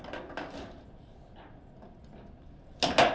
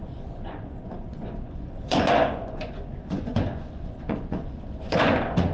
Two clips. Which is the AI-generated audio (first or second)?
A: second